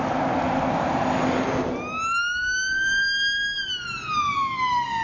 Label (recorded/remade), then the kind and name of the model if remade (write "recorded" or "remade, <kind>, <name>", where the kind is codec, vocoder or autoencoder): recorded